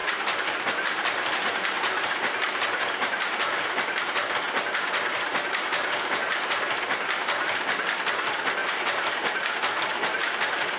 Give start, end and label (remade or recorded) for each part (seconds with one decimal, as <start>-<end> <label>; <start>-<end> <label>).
0.0-3.6 remade; 3.6-5.3 recorded; 5.3-6.1 remade; 6.1-8.6 recorded; 8.6-9.1 remade; 9.1-10.8 recorded